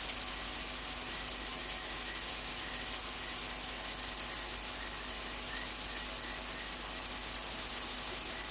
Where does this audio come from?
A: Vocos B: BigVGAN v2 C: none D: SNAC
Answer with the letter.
C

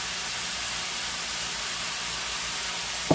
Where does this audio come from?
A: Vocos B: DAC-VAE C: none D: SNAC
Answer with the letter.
C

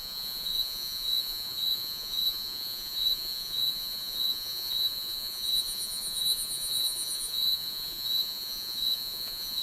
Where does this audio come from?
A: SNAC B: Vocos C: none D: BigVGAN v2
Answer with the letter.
B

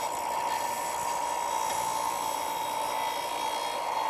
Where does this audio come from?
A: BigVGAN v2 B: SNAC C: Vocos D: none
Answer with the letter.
D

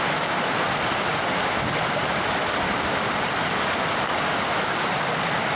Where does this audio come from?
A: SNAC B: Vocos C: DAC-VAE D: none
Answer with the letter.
D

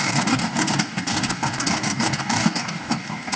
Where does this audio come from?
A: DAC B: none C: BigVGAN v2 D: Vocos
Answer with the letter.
A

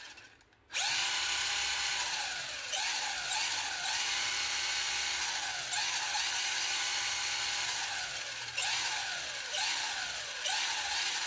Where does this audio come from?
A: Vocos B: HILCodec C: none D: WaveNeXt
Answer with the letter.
C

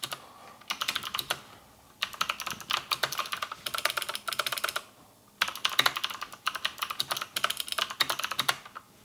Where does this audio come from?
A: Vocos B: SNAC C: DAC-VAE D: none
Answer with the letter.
D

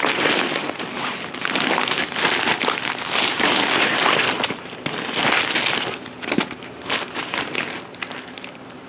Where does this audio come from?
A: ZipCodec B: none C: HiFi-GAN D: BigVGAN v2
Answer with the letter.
B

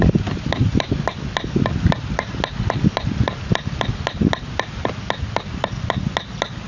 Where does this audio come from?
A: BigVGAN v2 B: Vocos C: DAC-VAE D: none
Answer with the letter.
D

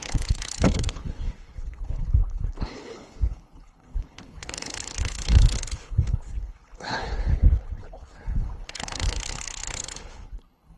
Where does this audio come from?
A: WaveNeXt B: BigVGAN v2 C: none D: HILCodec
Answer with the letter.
D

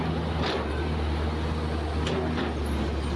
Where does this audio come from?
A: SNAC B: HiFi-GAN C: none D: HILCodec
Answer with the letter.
C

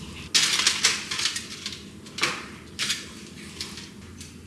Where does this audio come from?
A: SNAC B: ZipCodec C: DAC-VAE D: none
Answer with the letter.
D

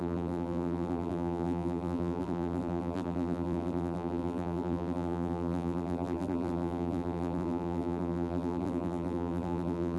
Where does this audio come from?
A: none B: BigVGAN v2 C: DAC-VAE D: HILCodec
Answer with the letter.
B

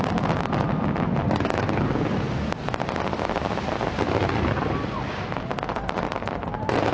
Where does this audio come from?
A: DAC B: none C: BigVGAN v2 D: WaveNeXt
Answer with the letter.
B